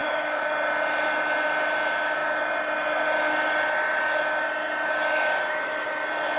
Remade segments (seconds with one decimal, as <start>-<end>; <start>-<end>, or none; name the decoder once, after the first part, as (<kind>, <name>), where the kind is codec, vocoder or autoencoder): 0.0-0.5 (codec, DAC)